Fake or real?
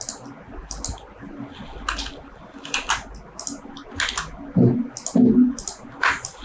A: real